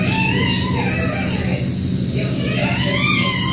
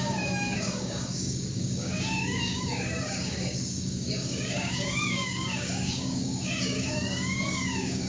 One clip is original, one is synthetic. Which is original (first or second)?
first